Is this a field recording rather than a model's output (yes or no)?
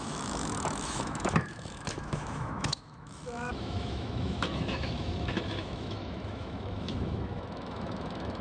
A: no